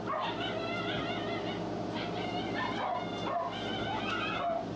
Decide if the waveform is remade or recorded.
recorded